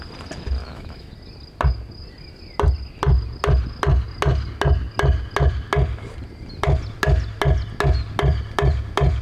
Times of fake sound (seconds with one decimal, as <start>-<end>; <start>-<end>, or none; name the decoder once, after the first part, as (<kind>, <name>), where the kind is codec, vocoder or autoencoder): 0.6-1.1 (autoencoder, DAC-VAE)